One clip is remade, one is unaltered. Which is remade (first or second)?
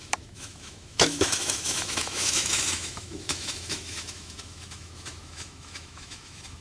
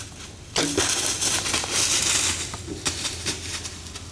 first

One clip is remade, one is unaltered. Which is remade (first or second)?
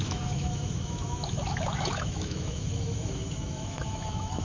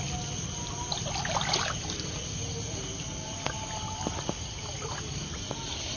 first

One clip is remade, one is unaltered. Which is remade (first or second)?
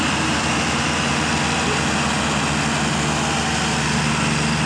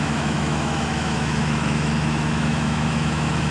second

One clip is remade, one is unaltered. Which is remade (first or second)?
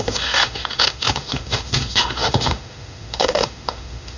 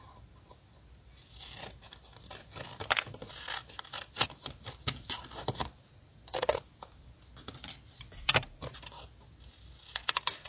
first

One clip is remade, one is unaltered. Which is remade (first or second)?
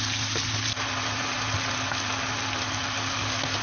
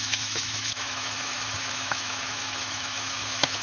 second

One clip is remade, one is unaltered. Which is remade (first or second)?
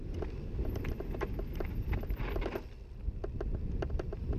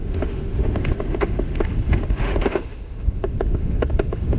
second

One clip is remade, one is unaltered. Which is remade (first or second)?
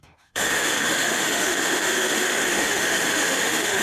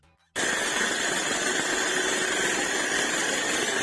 first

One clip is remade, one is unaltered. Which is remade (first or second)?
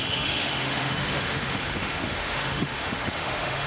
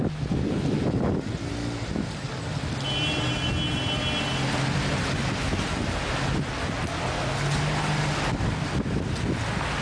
first